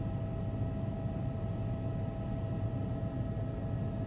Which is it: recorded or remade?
recorded